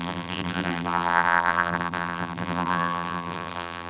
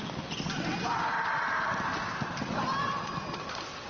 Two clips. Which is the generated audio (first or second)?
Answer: first